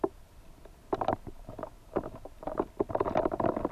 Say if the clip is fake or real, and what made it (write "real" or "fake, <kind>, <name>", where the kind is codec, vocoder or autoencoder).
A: real